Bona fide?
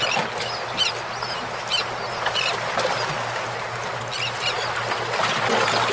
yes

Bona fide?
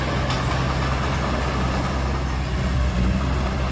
yes